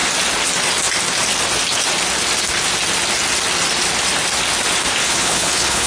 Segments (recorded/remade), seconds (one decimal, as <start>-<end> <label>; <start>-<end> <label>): 0.0-5.0 recorded; 5.0-5.9 remade